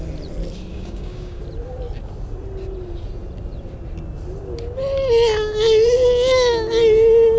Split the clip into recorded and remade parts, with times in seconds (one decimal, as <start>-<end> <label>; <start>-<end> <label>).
0.0-0.7 recorded; 0.7-1.4 remade; 1.4-7.4 recorded